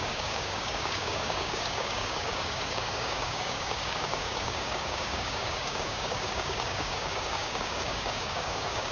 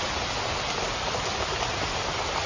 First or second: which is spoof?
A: first